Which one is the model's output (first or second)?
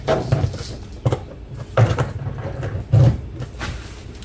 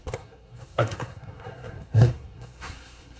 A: second